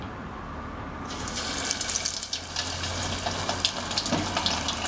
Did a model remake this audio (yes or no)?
no